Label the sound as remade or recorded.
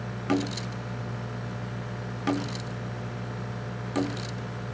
recorded